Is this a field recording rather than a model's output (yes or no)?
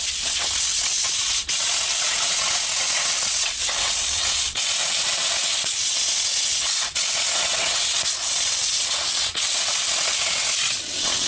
no